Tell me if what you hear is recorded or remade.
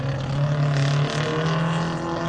recorded